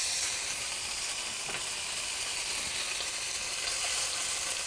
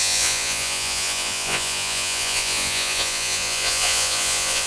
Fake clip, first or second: second